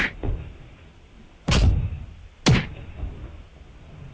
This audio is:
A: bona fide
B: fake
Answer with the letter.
A